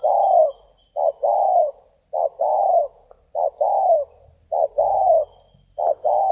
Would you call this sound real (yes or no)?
yes